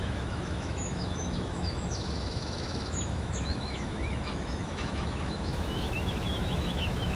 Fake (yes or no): yes